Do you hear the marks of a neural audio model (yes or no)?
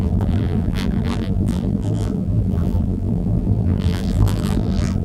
yes